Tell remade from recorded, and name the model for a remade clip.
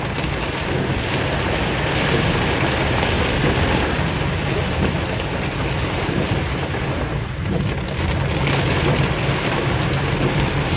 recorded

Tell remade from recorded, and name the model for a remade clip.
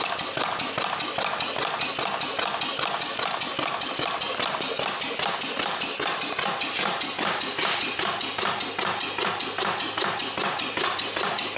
recorded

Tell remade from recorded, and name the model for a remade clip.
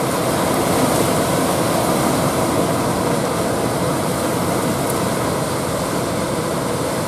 recorded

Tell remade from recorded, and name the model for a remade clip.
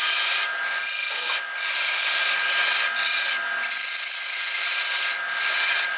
recorded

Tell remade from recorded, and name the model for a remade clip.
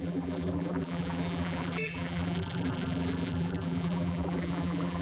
remade, vocoder, BigVGAN v2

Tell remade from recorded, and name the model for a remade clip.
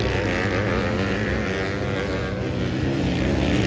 recorded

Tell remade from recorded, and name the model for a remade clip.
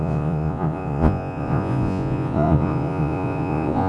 remade, vocoder, Vocos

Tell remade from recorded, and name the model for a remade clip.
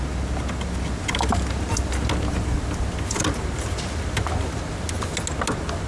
recorded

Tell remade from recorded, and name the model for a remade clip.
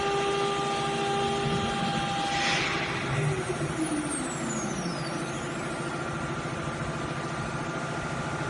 recorded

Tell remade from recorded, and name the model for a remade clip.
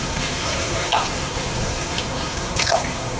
remade, codec, SNAC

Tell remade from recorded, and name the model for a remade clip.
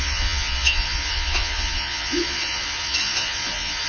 remade, vocoder, Vocos